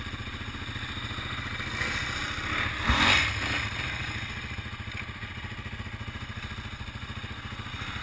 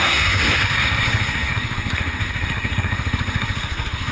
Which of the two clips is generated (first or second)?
second